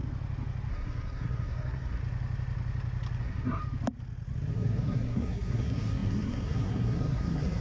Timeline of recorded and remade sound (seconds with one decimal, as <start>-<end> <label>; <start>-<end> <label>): 0.0-0.7 recorded; 0.7-2.0 remade; 2.0-3.2 recorded; 3.2-3.6 remade; 3.6-4.5 recorded; 4.5-7.6 remade